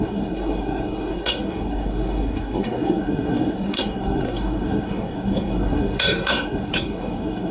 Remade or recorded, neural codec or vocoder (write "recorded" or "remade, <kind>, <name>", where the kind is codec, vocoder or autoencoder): remade, codec, SNAC